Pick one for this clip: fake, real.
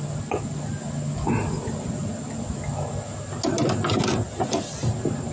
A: real